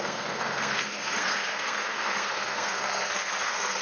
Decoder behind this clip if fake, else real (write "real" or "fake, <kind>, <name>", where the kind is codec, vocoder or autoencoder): fake, codec, SNAC